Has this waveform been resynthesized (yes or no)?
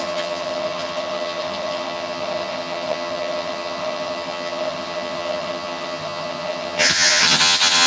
yes